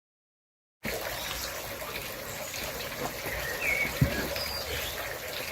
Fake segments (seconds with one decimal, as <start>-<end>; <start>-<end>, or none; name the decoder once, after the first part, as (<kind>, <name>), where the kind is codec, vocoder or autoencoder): none